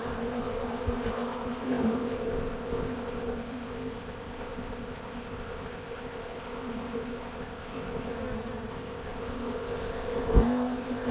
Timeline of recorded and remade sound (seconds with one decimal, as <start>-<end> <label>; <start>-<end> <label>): 0.0-8.2 remade; 8.2-8.7 recorded; 8.7-11.1 remade